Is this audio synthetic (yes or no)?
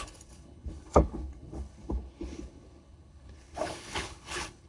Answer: yes